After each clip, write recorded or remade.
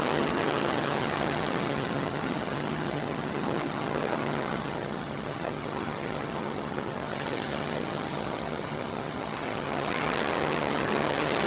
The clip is remade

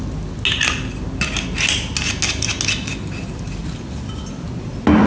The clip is recorded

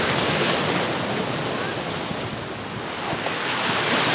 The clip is recorded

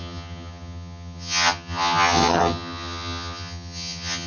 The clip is remade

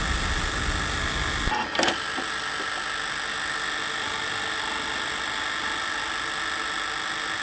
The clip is recorded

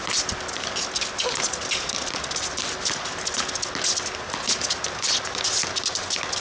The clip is recorded